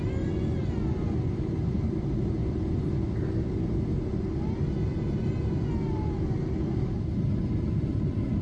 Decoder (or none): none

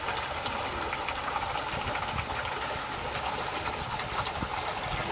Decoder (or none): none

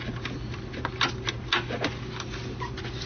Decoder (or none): none